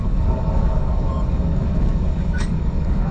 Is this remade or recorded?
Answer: remade